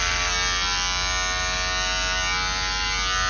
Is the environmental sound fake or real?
real